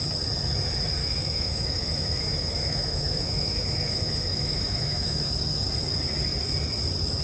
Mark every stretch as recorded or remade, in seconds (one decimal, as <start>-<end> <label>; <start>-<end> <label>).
0.0-1.0 recorded; 1.0-5.3 remade; 5.3-7.2 recorded